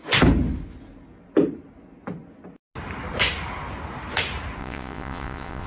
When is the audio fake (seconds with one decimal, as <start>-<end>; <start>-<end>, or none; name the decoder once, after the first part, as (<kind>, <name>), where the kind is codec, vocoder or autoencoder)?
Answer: 4.6-5.7 (vocoder, WaveNeXt)